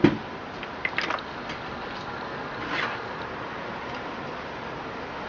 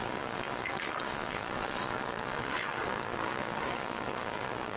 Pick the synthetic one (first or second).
second